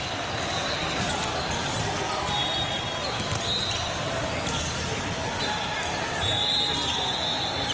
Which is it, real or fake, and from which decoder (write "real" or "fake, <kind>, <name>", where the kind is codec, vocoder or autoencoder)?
real